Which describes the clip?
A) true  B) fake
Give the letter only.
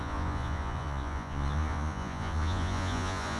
B